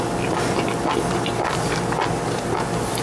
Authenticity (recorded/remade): recorded